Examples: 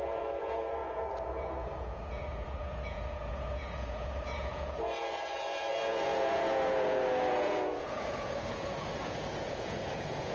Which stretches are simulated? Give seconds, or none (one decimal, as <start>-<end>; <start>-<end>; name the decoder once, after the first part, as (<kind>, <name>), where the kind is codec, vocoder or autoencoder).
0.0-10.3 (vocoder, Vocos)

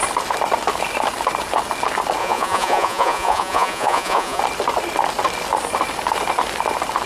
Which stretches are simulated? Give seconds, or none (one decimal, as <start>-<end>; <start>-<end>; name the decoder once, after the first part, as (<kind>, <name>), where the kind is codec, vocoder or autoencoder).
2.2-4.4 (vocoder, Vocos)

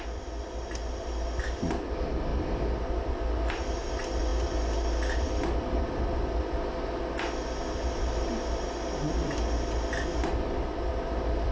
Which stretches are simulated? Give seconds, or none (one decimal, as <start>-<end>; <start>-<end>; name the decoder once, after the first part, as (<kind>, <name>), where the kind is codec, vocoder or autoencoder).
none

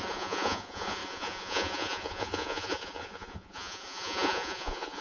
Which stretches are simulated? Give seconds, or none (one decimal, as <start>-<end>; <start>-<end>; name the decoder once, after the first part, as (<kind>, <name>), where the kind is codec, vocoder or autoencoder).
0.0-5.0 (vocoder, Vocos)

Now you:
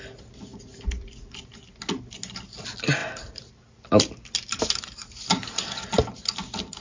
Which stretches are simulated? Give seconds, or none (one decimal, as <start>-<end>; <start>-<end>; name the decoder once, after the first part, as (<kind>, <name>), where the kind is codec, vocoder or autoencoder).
none

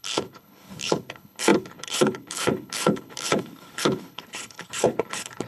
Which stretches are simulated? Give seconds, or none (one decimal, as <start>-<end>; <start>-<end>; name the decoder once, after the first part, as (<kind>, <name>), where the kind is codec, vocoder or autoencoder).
0.0-5.5 (codec, HILCodec)

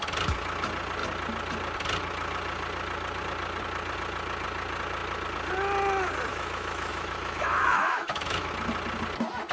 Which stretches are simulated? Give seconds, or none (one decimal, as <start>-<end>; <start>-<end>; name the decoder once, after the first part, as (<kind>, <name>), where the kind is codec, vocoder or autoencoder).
6.3-8.5 (autoencoder, DAC-VAE)